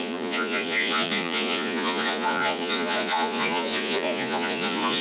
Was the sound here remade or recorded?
remade